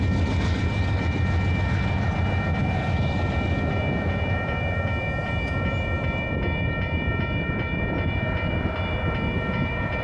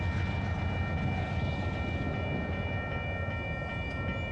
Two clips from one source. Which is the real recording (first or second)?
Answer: second